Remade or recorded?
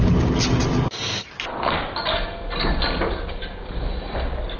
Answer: recorded